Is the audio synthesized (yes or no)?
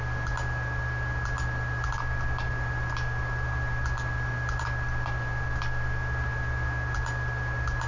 no